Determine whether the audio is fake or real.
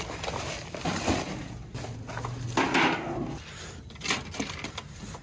real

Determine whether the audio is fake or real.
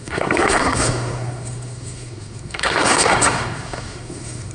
fake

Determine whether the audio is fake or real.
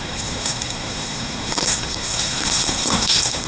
fake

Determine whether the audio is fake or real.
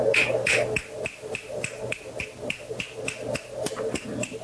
real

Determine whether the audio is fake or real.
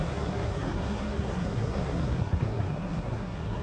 fake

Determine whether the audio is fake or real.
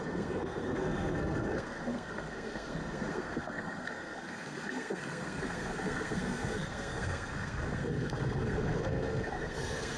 fake